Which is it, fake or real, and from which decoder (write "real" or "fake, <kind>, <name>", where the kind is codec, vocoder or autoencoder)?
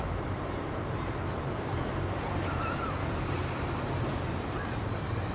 fake, vocoder, BigVGAN v2